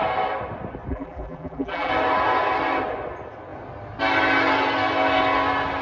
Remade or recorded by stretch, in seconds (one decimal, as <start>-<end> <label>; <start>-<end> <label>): 0.0-0.9 recorded; 0.9-1.9 remade; 1.9-5.8 recorded